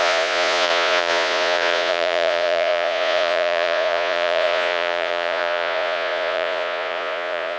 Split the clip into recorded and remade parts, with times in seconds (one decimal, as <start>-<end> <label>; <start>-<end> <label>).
0.0-7.6 remade